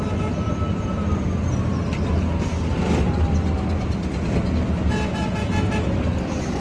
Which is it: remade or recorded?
recorded